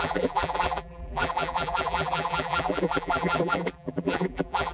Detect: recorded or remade remade